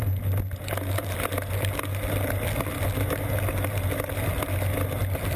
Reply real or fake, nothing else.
real